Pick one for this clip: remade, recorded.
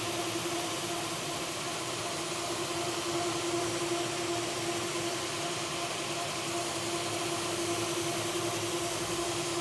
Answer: recorded